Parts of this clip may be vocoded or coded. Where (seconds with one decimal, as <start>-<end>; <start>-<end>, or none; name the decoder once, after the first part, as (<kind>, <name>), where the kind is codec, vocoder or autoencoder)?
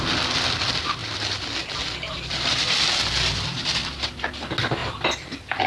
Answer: 1.0-3.6 (vocoder, BigVGAN v2)